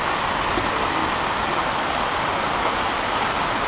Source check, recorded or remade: recorded